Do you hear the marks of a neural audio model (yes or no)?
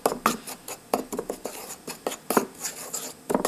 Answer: no